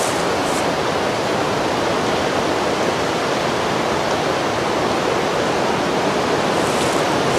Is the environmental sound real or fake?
real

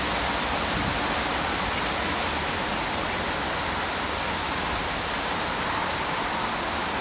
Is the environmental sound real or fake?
real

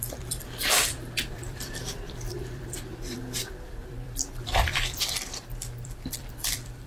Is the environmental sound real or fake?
fake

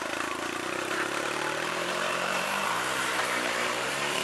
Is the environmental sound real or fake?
fake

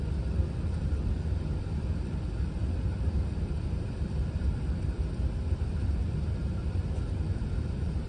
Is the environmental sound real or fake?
fake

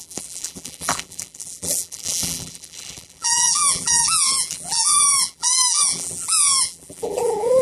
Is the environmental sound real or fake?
fake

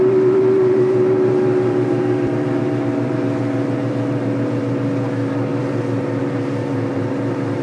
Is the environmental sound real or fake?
fake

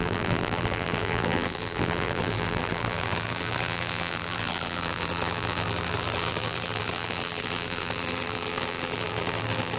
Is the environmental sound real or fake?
fake